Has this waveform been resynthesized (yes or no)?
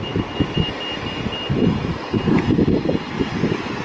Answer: no